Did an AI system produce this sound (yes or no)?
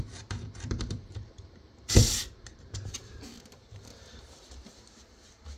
yes